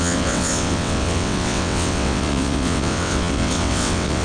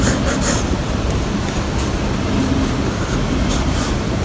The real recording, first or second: second